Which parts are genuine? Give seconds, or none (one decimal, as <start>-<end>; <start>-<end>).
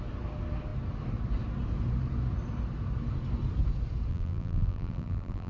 0.0-4.1